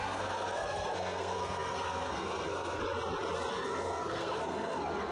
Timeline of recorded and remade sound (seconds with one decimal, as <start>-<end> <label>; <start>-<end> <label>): 0.0-2.8 remade; 2.8-3.5 recorded; 3.5-5.1 remade